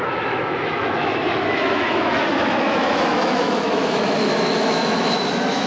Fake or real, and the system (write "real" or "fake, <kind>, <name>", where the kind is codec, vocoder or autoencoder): fake, autoencoder, DAC-VAE